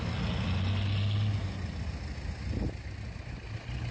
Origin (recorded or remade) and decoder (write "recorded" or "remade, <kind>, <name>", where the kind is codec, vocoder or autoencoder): recorded